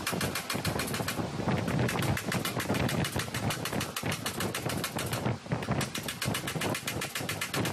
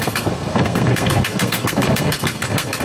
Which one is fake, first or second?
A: second